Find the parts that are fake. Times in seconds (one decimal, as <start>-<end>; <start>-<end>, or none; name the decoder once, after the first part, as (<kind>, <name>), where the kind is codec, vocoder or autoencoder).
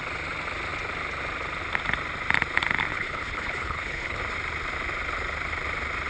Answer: 2.9-4.2 (codec, HILCodec)